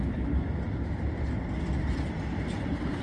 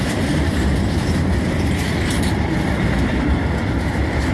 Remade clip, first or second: second